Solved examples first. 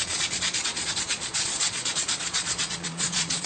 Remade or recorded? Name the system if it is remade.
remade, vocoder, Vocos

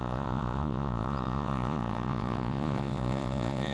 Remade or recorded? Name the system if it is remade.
remade, vocoder, Vocos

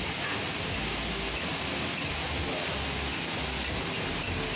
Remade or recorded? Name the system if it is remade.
recorded